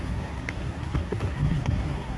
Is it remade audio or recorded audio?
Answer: remade